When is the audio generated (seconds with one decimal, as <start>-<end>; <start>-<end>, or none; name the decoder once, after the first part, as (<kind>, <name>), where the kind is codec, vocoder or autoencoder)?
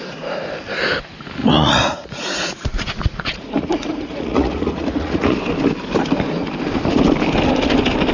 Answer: 1.4-5.4 (vocoder, Vocos)